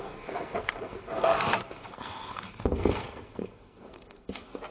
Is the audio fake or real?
fake